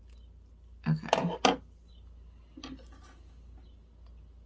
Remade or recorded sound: recorded